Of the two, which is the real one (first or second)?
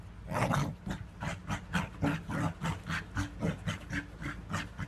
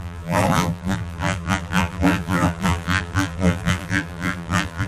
first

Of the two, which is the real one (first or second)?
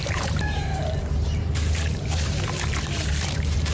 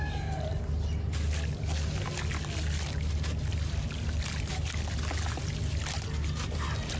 second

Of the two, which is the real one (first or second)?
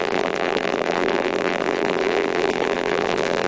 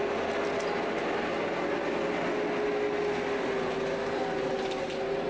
second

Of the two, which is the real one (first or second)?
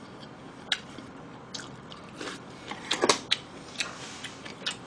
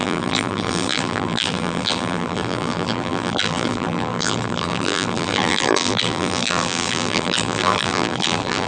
first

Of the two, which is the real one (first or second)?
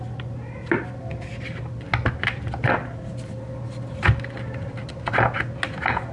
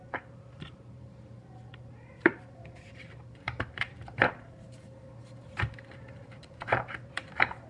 first